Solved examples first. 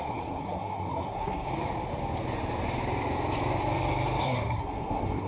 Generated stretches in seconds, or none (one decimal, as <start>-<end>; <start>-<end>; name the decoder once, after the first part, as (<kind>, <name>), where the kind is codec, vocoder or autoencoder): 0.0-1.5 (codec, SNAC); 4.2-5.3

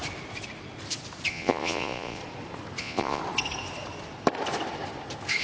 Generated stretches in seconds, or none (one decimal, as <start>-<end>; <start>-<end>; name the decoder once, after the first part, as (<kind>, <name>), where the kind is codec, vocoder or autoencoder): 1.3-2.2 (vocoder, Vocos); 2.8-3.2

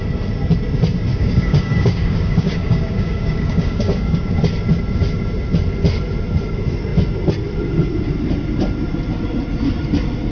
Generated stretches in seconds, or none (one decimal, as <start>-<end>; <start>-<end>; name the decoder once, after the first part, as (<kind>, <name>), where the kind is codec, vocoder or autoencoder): 1.1-4.3 (codec, DAC)

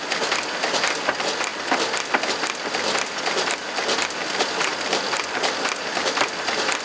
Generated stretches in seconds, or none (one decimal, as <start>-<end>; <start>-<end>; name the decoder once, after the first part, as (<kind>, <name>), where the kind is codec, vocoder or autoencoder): none

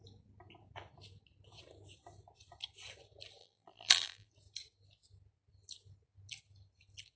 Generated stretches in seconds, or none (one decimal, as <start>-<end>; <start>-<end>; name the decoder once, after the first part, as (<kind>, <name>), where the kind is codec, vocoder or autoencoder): 3.4-4.3 (vocoder, BigVGAN v2)